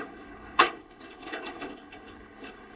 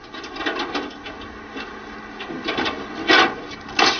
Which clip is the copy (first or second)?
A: first